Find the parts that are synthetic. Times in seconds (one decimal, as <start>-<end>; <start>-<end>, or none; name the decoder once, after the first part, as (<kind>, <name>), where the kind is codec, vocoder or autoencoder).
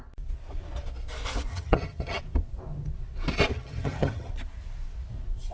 1.5-2.2 (vocoder, HiFi-GAN); 3.5-4.3